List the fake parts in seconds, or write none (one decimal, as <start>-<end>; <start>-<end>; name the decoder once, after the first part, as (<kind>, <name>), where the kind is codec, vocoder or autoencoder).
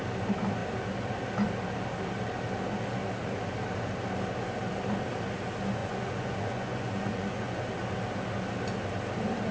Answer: 5.8-7.6 (vocoder, Vocos)